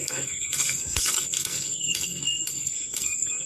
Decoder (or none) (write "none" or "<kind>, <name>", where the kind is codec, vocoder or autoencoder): codec, SNAC